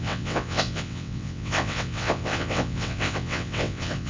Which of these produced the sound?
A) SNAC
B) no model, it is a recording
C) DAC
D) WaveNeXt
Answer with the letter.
D